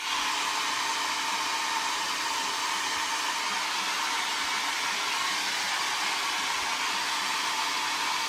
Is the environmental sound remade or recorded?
remade